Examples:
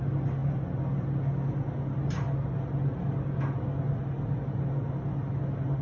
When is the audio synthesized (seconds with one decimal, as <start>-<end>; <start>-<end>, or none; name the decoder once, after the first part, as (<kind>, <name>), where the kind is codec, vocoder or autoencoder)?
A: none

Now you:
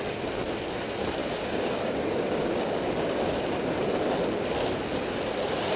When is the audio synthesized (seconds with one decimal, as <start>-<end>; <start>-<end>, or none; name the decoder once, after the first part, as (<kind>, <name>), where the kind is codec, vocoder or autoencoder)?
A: 1.2-3.4 (codec, DAC)

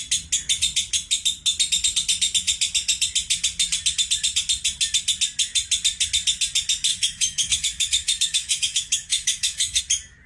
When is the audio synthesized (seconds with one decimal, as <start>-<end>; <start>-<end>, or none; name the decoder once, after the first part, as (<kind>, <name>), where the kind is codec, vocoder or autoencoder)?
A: 6.9-9.8 (autoencoder, DAC-VAE)

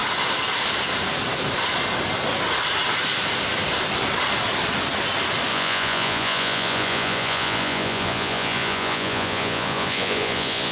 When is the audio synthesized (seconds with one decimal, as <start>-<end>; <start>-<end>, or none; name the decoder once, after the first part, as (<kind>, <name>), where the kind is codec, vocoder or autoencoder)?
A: 5.5-10.7 (vocoder, Vocos)